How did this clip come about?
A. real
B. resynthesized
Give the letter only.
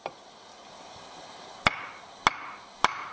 A